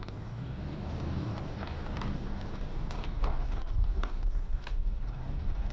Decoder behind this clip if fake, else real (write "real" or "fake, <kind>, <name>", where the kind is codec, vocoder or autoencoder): fake, codec, DAC